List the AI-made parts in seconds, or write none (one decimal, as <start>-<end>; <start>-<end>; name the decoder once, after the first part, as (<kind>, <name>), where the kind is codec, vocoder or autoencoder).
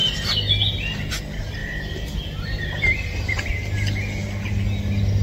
none